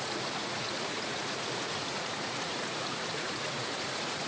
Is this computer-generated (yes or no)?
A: yes